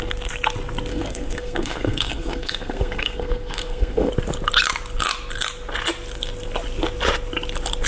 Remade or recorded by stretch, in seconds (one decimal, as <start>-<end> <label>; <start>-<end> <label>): 0.0-0.9 recorded; 0.9-4.1 remade; 4.1-7.9 recorded